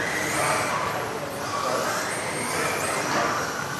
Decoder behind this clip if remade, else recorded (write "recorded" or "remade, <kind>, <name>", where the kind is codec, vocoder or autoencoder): recorded